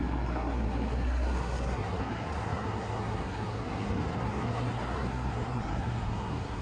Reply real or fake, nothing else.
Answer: fake